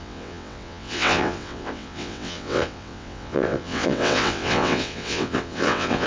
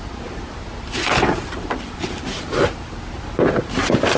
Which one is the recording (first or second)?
second